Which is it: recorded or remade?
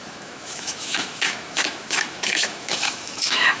remade